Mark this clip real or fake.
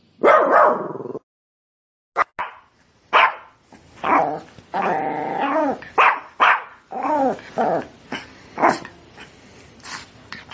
real